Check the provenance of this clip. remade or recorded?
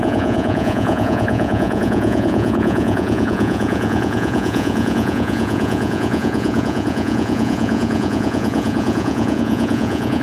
remade